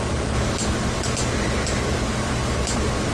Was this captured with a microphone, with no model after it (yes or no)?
no